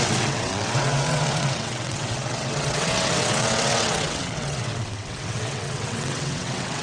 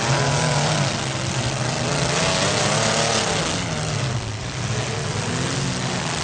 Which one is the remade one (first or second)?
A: first